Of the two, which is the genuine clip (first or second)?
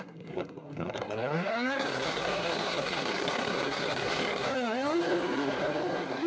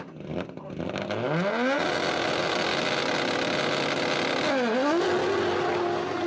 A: second